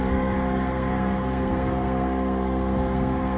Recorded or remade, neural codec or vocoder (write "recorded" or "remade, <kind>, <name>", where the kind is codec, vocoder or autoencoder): remade, codec, SNAC